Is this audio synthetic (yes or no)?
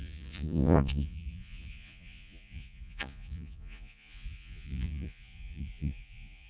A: yes